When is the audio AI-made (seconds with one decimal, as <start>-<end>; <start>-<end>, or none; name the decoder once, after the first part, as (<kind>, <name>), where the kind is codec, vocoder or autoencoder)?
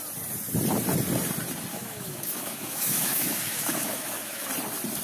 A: 1.7-4.5 (autoencoder, DAC-VAE)